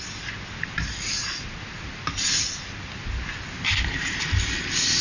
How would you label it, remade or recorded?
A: recorded